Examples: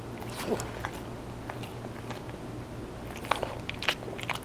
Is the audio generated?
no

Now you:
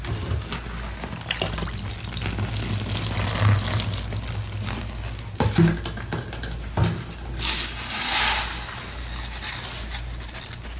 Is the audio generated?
no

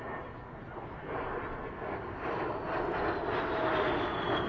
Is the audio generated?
no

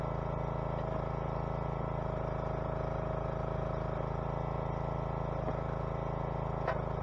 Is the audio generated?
no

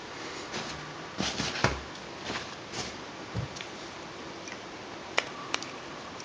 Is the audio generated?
no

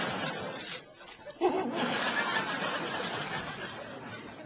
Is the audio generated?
no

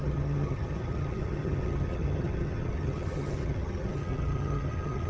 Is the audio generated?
yes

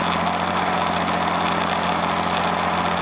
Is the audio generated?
no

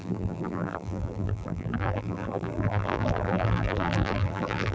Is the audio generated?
yes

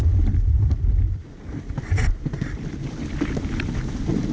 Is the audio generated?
yes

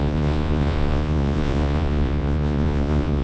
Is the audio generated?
yes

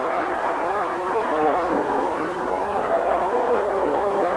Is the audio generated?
yes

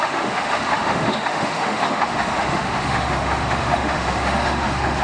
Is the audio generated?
yes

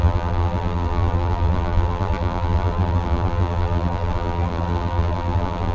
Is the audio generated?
yes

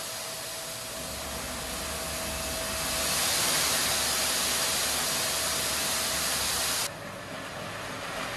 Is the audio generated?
no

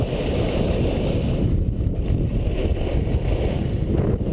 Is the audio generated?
no